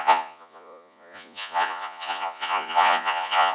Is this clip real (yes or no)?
no